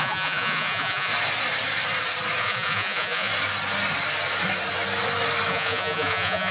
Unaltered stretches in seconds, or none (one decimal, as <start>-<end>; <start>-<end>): 1.1-2.4; 3.3-5.5

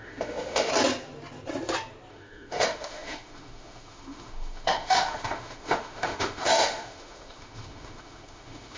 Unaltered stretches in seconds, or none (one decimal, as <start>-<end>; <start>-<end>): 0.7-2.1

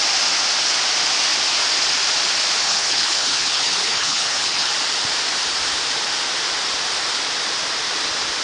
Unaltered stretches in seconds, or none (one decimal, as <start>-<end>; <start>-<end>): 0.0-2.6; 4.7-8.4

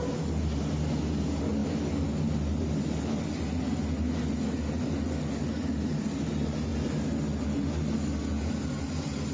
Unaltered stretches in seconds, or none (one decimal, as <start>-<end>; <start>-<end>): 0.0-9.3

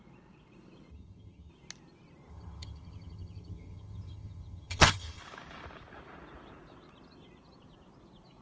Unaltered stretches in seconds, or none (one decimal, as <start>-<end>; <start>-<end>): 0.0-0.9; 1.5-2.3; 5.2-8.4